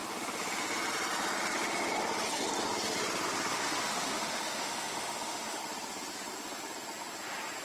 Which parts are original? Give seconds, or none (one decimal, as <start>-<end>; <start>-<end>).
0.0-3.5; 5.6-7.6